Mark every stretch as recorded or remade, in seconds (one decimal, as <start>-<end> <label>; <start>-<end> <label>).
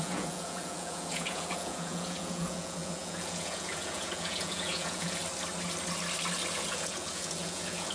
0.0-5.2 remade; 5.2-6.5 recorded; 6.5-7.9 remade